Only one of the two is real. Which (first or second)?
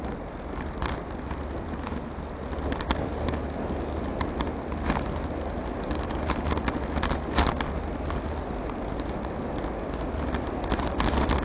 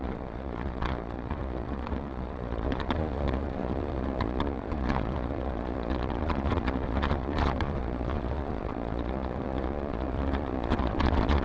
first